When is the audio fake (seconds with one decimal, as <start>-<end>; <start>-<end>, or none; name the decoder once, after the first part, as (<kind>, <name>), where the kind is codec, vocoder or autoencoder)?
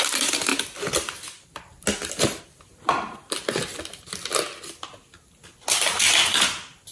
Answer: 0.0-0.5 (vocoder, BigVGAN v2); 2.4-2.9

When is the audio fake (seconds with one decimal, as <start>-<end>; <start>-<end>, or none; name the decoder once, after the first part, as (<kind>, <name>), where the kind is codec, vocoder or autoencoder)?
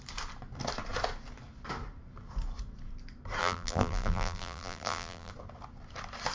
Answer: 3.4-5.3 (vocoder, BigVGAN v2)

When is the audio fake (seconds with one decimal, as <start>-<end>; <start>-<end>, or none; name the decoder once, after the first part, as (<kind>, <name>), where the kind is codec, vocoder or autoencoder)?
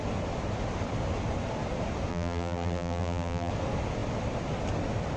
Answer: 2.1-3.5 (vocoder, BigVGAN v2)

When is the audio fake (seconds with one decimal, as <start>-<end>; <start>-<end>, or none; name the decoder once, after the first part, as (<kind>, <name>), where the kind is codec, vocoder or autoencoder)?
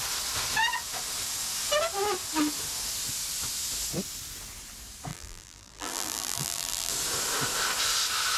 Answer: 5.1-6.9 (vocoder, BigVGAN v2)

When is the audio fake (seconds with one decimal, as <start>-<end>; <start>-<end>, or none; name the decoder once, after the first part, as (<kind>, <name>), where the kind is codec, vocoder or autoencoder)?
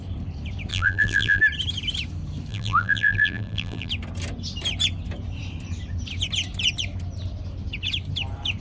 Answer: 0.7-1.4 (vocoder, BigVGAN v2); 2.5-3.9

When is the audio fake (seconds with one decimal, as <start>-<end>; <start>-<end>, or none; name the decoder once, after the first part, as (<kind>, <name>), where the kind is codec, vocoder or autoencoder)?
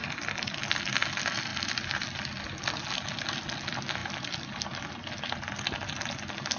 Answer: 0.0-0.6 (vocoder, BigVGAN v2); 1.5-2.8; 4.0-4.9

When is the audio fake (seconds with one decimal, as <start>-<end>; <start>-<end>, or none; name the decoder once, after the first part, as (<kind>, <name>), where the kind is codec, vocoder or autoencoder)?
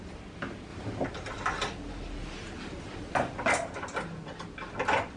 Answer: none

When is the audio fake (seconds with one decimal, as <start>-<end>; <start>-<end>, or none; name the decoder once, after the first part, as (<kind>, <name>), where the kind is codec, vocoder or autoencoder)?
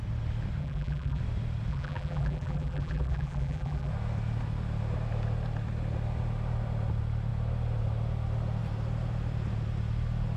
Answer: 0.6-1.2 (vocoder, BigVGAN v2); 1.7-3.9